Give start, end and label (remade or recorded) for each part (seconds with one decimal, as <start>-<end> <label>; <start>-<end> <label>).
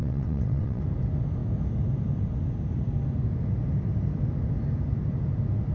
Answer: 0.0-0.8 remade; 0.8-5.7 recorded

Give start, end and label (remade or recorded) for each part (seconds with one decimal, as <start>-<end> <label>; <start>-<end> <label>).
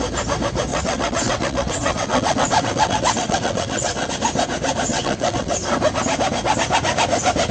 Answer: 0.0-0.7 recorded; 0.7-4.1 remade; 4.1-4.9 recorded; 4.9-5.5 remade; 5.5-7.5 recorded